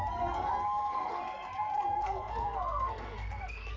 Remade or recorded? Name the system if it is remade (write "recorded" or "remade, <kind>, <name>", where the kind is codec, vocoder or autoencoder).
remade, codec, SNAC